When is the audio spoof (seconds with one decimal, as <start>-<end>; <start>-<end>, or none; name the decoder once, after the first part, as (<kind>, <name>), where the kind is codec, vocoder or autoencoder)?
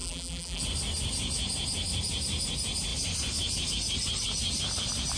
0.0-0.6 (vocoder, BigVGAN v2)